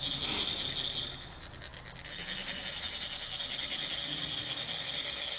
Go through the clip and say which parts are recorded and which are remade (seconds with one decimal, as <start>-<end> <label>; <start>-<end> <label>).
0.0-5.4 recorded